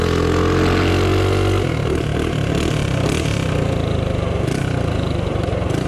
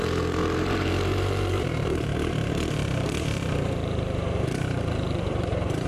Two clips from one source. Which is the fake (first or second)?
second